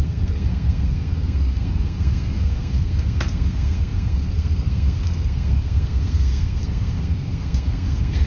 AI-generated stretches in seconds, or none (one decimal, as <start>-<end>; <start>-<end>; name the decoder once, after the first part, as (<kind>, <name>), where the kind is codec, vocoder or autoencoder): 0.0-8.3 (codec, SNAC)